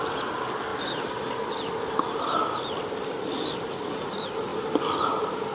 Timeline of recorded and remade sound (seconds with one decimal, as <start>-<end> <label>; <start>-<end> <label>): 0.0-0.7 recorded; 0.7-1.6 remade; 1.6-5.5 recorded